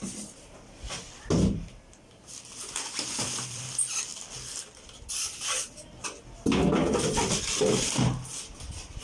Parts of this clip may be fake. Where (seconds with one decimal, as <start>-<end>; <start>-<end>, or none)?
none